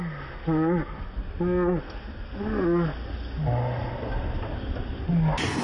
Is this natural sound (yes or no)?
yes